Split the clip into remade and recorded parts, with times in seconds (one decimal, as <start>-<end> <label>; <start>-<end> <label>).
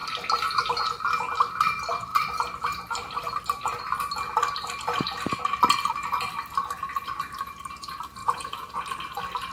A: 0.0-8.2 recorded; 8.2-8.7 remade; 8.7-9.5 recorded